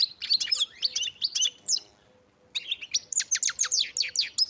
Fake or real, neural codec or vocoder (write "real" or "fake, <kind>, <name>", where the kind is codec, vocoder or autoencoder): real